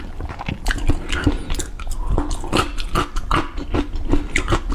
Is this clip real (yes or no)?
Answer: yes